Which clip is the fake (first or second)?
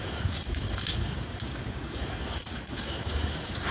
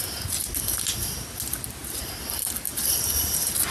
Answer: first